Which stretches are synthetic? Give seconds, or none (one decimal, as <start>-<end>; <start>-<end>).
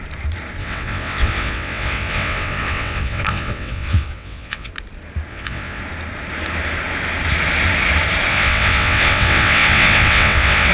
0.6-4.7; 5.3-5.8; 8.3-10.7